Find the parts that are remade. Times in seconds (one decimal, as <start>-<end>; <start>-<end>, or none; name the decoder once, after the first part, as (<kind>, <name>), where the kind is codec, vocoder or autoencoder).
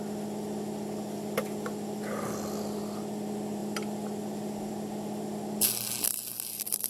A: none